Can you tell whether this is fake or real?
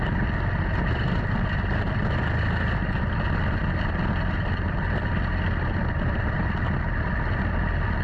real